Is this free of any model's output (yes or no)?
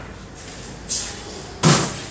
yes